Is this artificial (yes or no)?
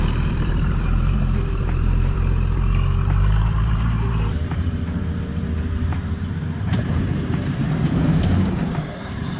yes